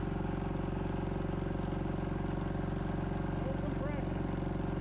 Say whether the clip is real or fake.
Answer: real